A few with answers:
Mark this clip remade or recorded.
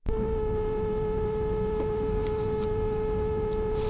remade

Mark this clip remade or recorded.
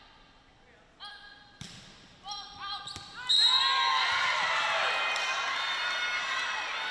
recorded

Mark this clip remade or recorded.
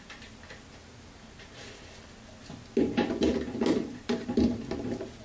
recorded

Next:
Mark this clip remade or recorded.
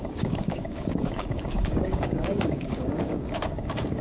remade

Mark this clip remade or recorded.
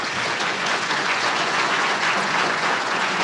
remade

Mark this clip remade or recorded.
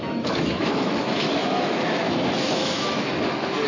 remade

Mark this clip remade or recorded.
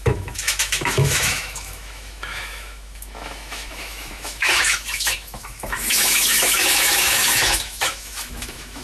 remade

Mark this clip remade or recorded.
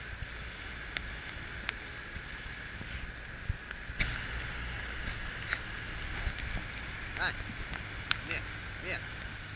recorded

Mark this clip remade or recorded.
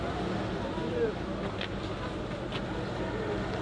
recorded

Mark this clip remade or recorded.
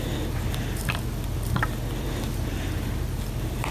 recorded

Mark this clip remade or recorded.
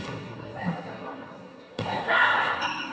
remade